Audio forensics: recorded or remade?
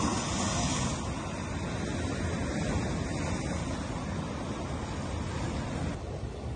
recorded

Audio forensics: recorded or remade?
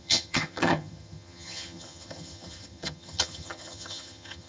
remade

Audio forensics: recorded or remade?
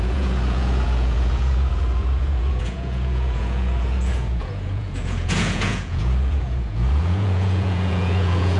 remade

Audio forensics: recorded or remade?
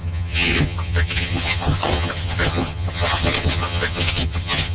remade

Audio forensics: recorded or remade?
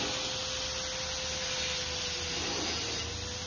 recorded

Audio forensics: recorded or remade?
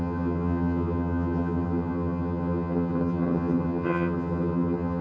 remade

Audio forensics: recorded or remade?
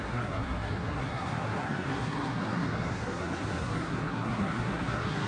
remade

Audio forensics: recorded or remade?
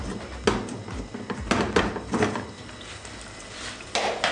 recorded